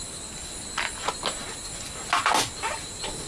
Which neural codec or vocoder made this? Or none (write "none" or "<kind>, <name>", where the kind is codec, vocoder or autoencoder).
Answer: none